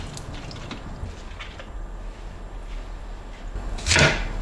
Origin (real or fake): real